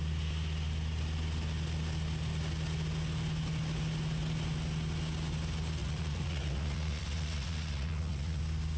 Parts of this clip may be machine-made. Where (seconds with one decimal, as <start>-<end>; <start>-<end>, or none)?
5.8-8.4

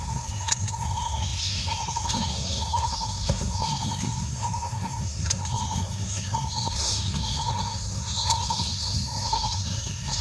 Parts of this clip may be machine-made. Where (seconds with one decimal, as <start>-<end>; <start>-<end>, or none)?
0.0-10.2

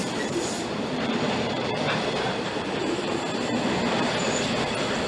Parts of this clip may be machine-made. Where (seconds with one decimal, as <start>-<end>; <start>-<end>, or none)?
0.0-3.1

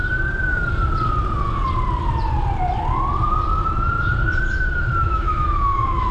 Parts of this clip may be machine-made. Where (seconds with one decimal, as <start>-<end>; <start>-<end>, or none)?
5.0-6.1

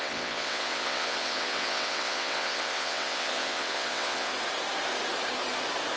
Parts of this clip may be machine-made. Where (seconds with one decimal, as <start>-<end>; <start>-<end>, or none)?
0.0-4.3